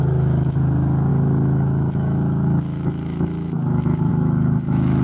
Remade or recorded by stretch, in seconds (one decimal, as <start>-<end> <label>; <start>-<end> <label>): 0.0-5.0 remade